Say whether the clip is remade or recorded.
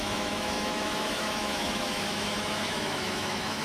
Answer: remade